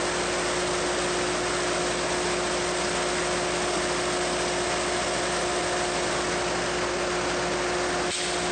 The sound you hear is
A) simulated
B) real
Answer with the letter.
B